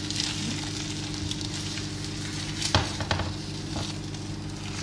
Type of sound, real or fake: real